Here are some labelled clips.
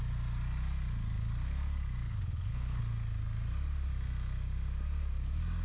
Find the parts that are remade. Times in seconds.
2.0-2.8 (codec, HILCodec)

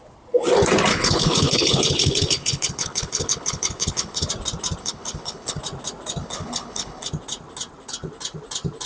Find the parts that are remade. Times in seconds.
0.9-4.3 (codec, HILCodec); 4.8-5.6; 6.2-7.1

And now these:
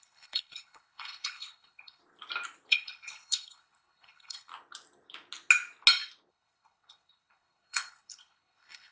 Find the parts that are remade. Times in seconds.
0.0-2.0 (codec, HILCodec); 2.7-4.5; 6.3-8.9